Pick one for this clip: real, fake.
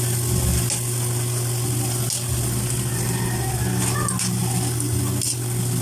real